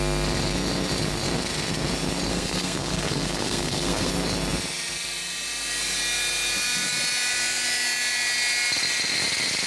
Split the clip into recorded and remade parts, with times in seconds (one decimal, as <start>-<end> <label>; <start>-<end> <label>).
0.0-2.3 recorded; 2.3-4.1 remade; 4.1-9.7 recorded

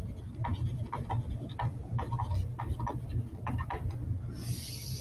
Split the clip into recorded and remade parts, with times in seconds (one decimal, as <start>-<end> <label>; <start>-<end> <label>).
0.0-5.0 recorded

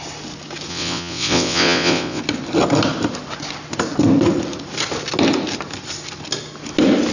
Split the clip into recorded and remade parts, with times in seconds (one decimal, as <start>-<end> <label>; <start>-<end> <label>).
0.0-0.7 recorded; 0.7-2.2 remade; 2.2-7.1 recorded

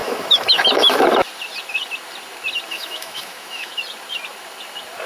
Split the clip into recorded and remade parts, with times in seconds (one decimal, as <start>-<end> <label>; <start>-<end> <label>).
0.0-1.0 remade; 1.0-2.7 recorded; 2.7-3.7 remade; 3.7-5.1 recorded

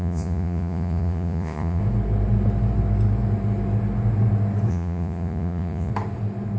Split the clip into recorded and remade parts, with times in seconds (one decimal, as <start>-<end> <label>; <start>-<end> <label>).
0.0-1.8 remade; 1.8-4.7 recorded; 4.7-5.9 remade; 5.9-6.6 recorded

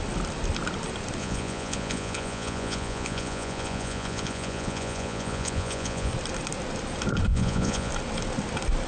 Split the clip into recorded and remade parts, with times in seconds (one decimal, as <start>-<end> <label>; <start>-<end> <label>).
0.0-1.2 recorded; 1.2-6.1 remade; 6.1-7.3 recorded; 7.3-7.9 remade; 7.9-8.9 recorded

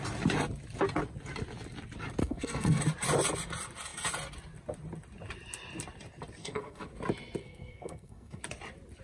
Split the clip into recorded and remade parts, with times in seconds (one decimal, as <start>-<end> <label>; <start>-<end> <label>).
0.0-2.2 recorded; 2.2-2.8 remade; 2.8-6.4 recorded; 6.4-6.9 remade; 6.9-7.4 recorded; 7.4-8.4 remade; 8.4-9.0 recorded